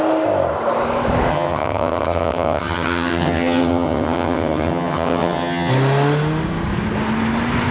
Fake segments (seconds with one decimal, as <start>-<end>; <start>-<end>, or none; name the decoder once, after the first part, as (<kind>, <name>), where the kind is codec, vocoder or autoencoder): 1.3-5.7 (vocoder, HiFi-GAN)

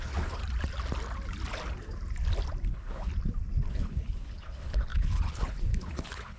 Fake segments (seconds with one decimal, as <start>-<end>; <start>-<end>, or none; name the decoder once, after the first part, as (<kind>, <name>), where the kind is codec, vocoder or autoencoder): 0.0-0.4 (codec, HILCodec); 2.7-3.1; 3.7-6.4

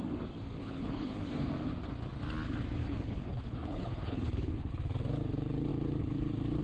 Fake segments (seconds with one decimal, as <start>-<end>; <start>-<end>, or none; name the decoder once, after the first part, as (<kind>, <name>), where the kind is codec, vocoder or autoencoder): 0.6-1.5 (codec, HILCodec); 2.8-4.7

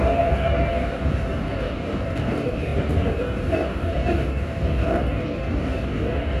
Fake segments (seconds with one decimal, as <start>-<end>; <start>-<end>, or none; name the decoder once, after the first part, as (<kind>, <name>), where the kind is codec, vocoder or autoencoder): 0.0-6.4 (codec, DAC)

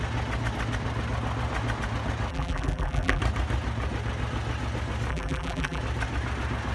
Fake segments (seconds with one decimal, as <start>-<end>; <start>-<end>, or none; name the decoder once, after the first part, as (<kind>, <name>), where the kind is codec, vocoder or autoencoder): 2.3-3.2 (vocoder, BigVGAN v2); 5.1-5.8

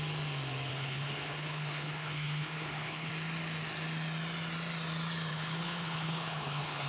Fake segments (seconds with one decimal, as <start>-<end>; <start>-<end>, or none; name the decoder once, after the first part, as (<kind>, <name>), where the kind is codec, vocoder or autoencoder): 0.7-3.1 (codec, HILCodec); 5.3-6.9

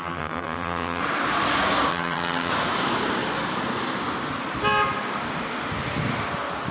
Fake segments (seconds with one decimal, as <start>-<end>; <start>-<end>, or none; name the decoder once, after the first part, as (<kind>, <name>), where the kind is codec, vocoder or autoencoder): 0.0-1.0 (vocoder, HiFi-GAN); 1.9-2.5

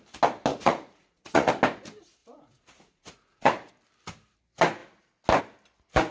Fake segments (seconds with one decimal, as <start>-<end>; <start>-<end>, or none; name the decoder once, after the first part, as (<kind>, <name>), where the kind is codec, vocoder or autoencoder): 0.5-1.5 (vocoder, Vocos); 2.2-3.7